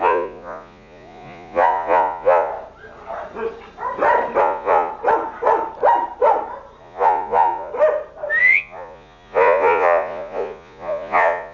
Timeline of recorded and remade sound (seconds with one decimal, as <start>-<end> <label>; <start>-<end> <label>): 0.0-2.5 remade; 2.5-4.4 recorded; 4.4-4.9 remade; 4.9-6.8 recorded; 6.8-7.7 remade; 7.7-8.4 recorded; 8.4-11.5 remade